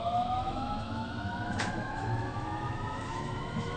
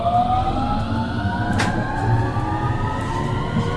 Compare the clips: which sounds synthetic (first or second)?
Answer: first